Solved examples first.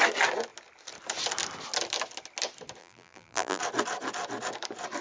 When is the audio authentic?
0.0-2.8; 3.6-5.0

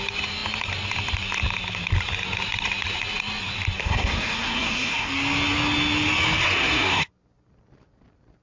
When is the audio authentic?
0.0-3.8; 5.1-6.4; 7.1-8.4

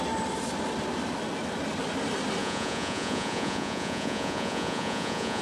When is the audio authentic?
0.0-2.4

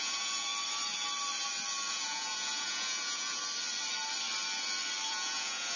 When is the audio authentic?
0.5-1.9; 3.4-5.1

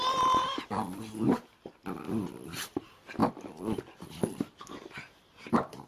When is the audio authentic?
0.5-2.8; 3.2-4.6

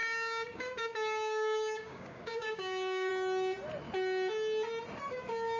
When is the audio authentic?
3.1-5.1

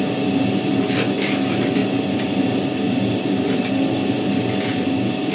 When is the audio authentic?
0.0-1.8; 3.7-5.3

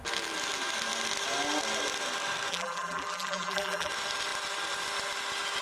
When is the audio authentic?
0.0-2.5; 3.9-5.6